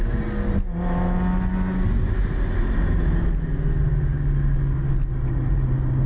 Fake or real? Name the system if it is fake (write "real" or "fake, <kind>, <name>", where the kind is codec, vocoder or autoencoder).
real